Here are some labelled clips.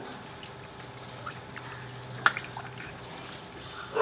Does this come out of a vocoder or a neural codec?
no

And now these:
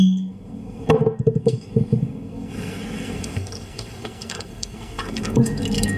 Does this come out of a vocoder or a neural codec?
yes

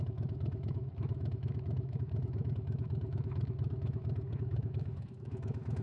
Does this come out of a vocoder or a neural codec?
yes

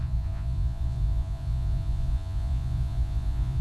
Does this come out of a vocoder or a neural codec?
yes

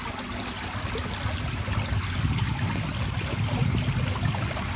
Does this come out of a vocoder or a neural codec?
no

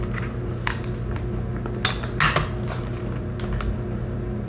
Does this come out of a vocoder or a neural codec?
no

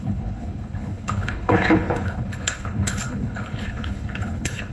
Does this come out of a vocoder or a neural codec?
yes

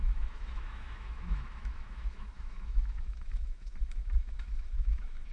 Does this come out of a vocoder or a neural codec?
yes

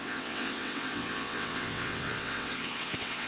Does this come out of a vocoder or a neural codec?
yes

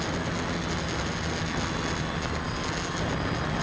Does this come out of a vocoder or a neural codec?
no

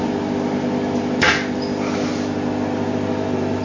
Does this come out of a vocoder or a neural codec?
no